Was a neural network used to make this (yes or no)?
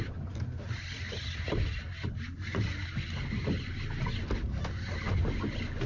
no